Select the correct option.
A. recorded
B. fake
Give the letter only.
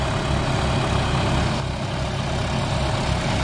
A